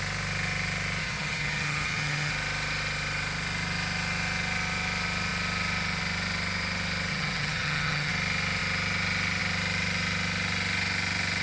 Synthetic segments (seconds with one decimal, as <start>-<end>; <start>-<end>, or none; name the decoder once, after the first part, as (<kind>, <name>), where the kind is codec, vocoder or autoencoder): 1.0-2.3 (vocoder, HiFi-GAN); 7.1-8.1